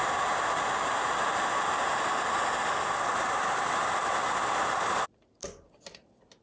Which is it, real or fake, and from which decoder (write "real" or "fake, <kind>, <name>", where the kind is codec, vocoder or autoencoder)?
real